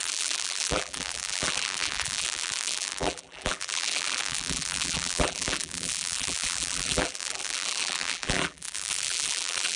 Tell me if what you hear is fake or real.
fake